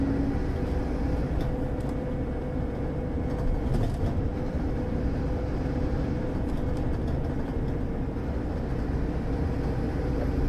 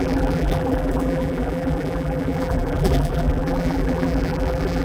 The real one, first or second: first